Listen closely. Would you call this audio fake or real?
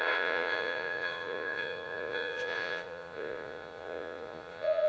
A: fake